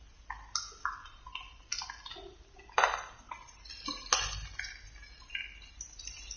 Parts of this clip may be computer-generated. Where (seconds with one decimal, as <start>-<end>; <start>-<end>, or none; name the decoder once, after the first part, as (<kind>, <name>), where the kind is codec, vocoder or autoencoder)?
none